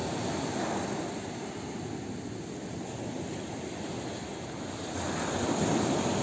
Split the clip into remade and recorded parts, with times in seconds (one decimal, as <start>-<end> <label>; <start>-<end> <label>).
0.0-6.2 recorded